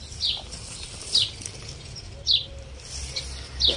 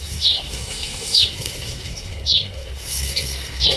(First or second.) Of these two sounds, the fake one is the second